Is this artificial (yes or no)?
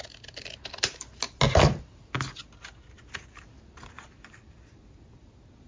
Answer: no